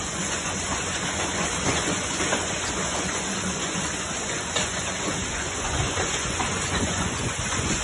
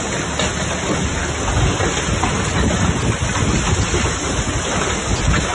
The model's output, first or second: first